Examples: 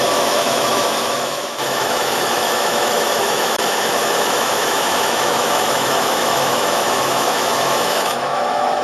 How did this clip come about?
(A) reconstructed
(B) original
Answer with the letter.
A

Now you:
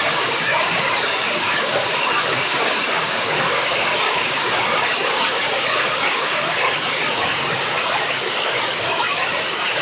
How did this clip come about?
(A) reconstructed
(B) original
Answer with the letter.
A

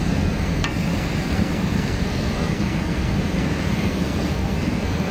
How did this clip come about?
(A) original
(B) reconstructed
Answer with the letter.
B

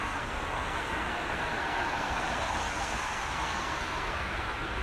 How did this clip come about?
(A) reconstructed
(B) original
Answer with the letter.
A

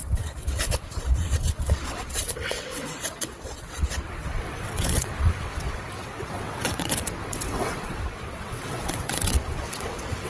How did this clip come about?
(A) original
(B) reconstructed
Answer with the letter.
B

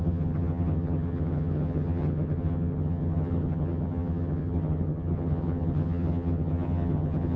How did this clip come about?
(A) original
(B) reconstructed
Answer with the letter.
B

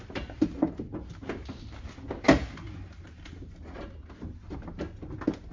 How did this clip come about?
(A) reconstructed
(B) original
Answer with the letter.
B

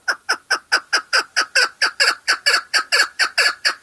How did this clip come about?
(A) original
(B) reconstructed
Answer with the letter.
A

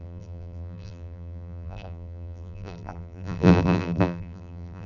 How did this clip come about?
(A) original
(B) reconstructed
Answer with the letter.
B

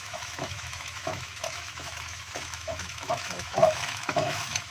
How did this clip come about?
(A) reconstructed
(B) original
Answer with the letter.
A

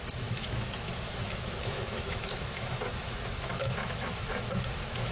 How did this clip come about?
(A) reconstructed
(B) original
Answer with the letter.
A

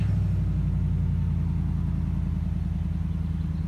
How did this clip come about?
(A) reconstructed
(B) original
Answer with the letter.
B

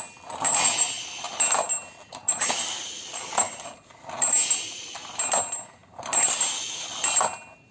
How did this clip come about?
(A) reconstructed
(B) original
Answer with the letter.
B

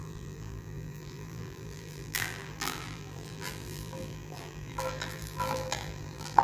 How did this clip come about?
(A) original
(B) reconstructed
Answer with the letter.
B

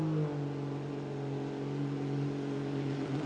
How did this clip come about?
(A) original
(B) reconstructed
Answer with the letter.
A